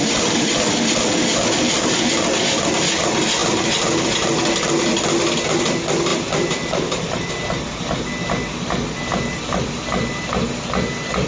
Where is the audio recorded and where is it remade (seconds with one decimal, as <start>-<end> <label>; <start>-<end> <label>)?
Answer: 0.0-6.1 recorded; 6.1-7.3 remade; 7.3-9.1 recorded; 9.1-9.8 remade; 9.8-11.3 recorded